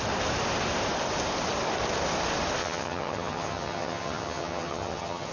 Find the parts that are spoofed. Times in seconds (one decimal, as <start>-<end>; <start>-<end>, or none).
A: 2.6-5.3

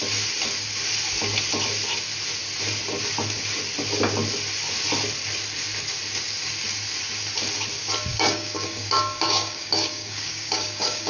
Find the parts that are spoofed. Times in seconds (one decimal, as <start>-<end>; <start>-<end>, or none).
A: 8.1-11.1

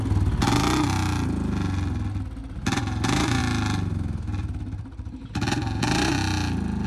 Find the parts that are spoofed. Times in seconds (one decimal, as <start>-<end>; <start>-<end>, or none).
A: 2.4-3.4; 3.9-6.1

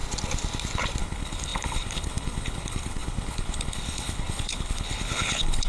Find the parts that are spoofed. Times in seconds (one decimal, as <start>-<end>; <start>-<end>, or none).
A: 1.0-5.7

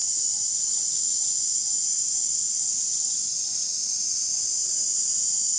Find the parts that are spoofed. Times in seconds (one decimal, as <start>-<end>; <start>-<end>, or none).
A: 1.9-3.2

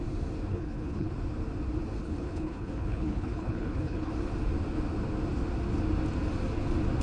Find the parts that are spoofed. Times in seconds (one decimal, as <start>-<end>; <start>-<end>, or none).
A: 0.5-1.1; 2.0-4.1

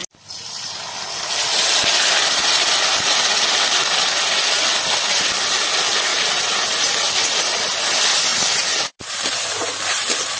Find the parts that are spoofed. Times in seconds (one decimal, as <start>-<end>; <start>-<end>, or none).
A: 6.1-6.8; 8.3-10.4